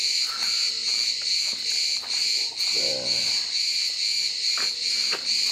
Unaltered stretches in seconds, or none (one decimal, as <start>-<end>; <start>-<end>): 0.0-5.5

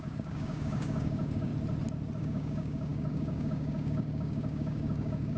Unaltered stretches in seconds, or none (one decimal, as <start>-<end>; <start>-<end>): 1.5-2.2

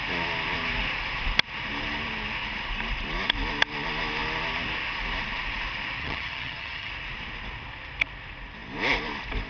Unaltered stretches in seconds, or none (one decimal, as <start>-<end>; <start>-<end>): 0.0-6.0; 6.9-9.5